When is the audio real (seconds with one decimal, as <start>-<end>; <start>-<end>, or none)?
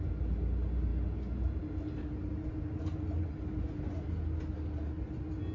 0.0-5.5